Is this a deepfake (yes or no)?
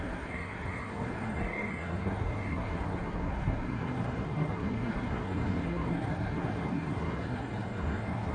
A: yes